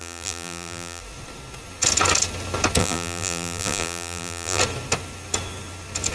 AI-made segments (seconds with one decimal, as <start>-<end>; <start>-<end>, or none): 0.0-1.0; 2.8-4.6